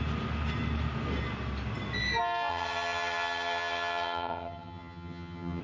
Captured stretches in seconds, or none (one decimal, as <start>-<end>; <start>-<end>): 0.0-2.5